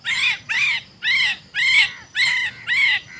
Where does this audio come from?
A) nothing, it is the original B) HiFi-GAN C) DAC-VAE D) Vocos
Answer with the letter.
A